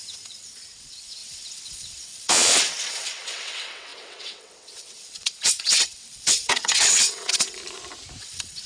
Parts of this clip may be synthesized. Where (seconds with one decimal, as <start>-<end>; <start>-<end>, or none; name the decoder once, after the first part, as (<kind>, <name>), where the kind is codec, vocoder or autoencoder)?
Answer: 0.0-7.6 (vocoder, WaveNeXt); 8.2-8.7